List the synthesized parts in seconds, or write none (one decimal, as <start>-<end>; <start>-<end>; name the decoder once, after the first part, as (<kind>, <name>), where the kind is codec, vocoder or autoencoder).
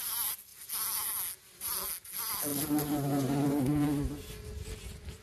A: 2.5-4.2 (vocoder, BigVGAN v2)